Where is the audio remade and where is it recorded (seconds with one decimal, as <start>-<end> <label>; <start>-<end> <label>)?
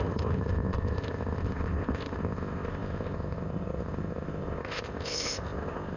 0.0-6.0 remade